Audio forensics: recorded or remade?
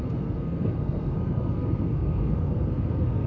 remade